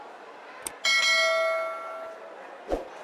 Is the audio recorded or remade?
recorded